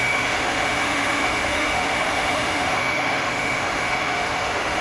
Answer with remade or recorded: remade